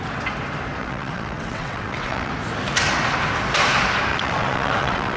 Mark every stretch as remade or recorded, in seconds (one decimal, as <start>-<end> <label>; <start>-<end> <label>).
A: 0.0-0.8 recorded; 0.8-2.3 remade; 2.3-4.1 recorded; 4.1-5.2 remade